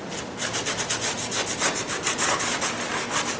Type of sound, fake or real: real